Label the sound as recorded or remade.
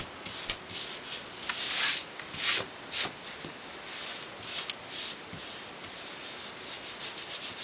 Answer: recorded